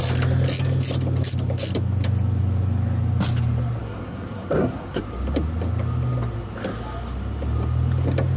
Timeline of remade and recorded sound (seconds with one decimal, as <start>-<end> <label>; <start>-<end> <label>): 0.0-3.8 recorded; 3.8-5.0 remade; 5.0-8.4 recorded